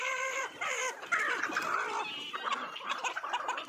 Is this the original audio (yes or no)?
no